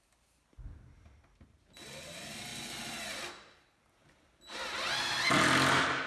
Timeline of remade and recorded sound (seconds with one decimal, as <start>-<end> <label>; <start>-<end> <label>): 0.0-6.1 recorded